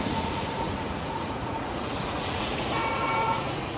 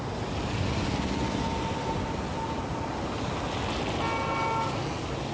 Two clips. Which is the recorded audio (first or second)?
second